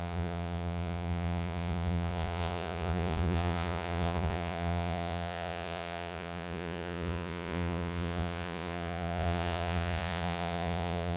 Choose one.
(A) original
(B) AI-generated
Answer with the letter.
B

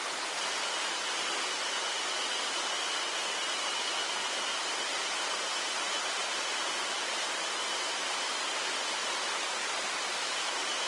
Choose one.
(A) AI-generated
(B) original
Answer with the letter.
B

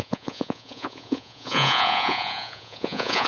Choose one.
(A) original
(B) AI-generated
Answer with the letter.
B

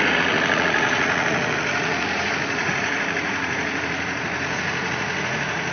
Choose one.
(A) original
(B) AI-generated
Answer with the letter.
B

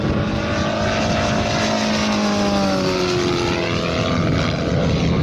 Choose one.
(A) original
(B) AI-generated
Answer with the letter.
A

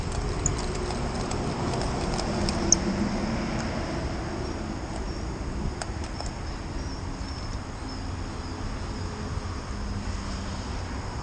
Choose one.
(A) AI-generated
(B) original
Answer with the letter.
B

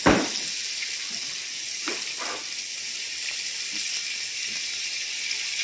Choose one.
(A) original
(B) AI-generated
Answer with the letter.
A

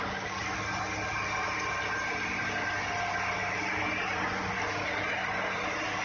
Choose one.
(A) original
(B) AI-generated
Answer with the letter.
A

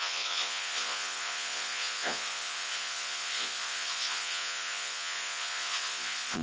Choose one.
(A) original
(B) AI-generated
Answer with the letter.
B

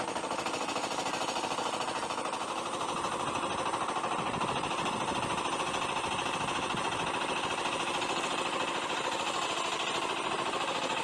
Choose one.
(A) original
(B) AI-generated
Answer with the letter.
A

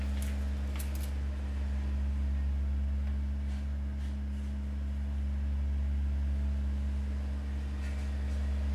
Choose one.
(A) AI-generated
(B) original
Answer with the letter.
B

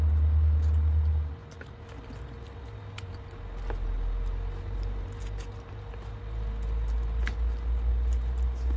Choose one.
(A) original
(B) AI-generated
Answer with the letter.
A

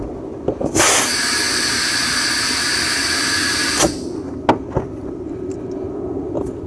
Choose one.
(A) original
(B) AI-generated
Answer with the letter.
A